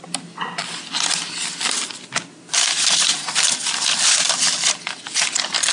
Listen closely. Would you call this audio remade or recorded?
recorded